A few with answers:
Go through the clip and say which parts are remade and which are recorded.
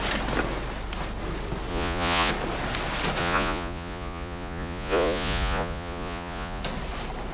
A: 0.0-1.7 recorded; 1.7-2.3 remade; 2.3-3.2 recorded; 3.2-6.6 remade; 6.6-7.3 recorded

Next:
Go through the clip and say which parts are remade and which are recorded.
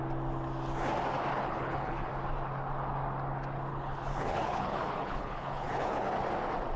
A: 0.0-1.3 recorded; 1.3-2.1 remade; 2.1-3.7 recorded; 3.7-6.1 remade; 6.1-6.8 recorded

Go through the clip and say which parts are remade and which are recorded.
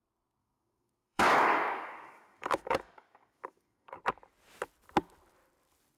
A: 0.0-0.4 recorded; 0.4-4.0 remade; 4.0-6.0 recorded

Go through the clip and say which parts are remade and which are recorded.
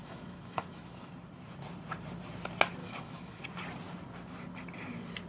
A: 0.0-1.1 remade; 1.1-2.8 recorded; 2.8-3.4 remade; 3.4-5.3 recorded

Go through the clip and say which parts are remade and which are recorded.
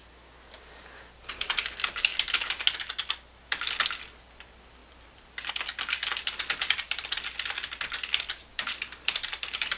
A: 0.0-4.8 recorded; 4.8-5.5 remade; 5.5-8.5 recorded; 8.5-9.8 remade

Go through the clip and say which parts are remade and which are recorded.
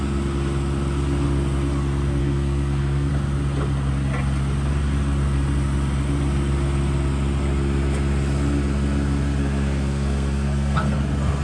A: 0.0-2.2 recorded; 2.2-3.1 remade; 3.1-9.4 recorded; 9.4-11.0 remade; 11.0-11.4 recorded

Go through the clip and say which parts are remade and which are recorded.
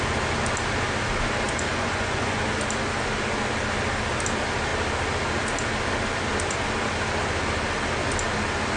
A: 0.0-1.7 recorded; 1.7-2.4 remade; 2.4-8.8 recorded